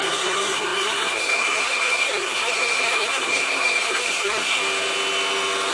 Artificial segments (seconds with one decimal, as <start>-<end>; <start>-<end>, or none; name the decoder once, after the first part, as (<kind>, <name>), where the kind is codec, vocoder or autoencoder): 0.0-4.6 (codec, SNAC)